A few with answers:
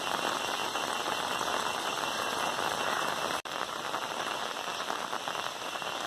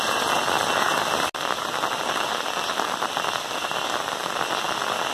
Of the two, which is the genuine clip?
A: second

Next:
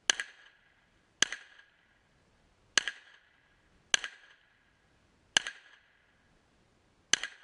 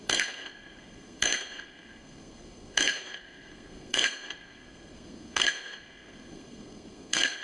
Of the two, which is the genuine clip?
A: first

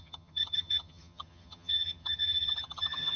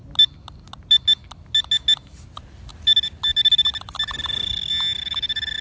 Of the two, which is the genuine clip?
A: second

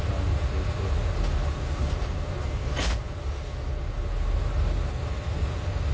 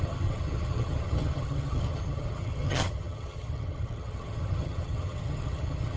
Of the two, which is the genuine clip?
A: first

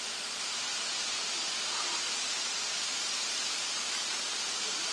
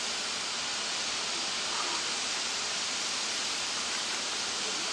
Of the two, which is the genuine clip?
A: first